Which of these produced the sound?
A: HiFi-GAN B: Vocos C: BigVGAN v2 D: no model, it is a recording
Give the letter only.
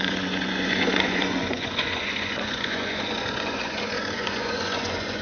B